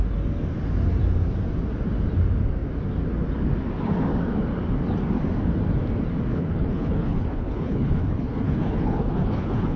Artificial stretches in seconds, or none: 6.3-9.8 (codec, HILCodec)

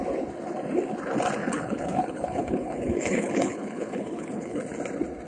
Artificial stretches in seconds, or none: 1.4-4.6 (codec, HILCodec)